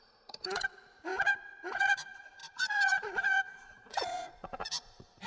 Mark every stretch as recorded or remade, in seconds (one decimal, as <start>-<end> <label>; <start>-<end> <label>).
0.0-5.3 remade